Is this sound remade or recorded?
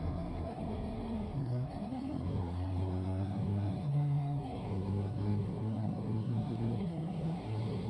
remade